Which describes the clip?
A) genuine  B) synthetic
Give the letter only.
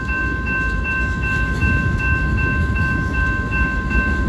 B